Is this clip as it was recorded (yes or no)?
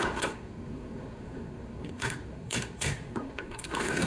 no